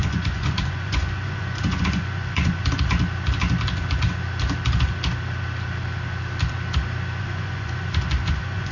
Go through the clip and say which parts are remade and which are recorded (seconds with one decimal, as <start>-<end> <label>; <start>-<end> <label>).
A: 0.0-2.6 remade; 2.6-7.2 recorded; 7.2-8.7 remade

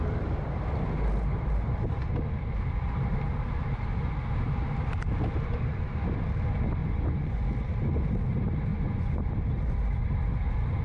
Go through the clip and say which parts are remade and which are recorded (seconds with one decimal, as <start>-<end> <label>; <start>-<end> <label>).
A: 0.0-6.8 recorded; 6.8-7.4 remade; 7.4-8.7 recorded; 8.7-9.2 remade; 9.2-10.8 recorded

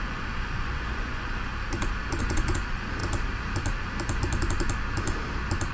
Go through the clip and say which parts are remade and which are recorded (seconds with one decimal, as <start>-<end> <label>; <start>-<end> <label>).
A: 0.0-1.5 remade; 1.5-2.2 recorded; 2.2-3.0 remade; 3.0-5.7 recorded

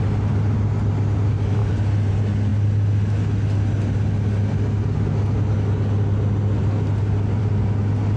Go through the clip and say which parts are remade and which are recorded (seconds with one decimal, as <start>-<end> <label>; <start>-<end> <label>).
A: 0.0-8.2 recorded

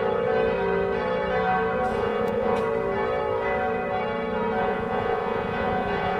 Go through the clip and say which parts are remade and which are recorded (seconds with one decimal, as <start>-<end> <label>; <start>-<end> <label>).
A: 0.0-1.9 recorded; 1.9-2.6 remade; 2.6-4.6 recorded; 4.6-6.2 remade

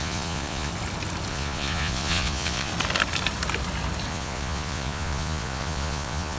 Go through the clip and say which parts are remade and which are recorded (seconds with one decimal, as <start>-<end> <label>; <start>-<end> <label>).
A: 0.0-0.7 remade; 0.7-1.3 recorded; 1.3-2.7 remade; 2.7-4.1 recorded; 4.1-6.4 remade